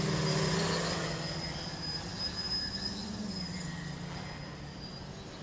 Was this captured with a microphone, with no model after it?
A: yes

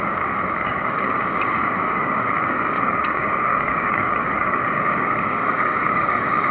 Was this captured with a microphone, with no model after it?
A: no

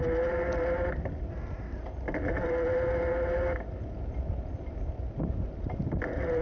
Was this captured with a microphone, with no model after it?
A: yes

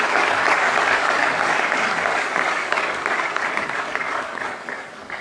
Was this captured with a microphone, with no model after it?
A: no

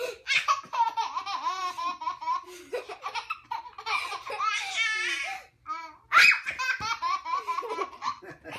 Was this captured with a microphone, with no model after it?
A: yes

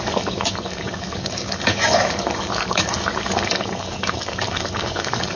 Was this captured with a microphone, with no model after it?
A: no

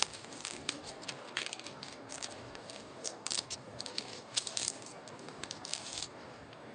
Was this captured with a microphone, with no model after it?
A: no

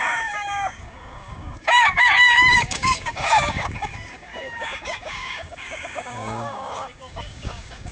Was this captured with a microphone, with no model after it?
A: no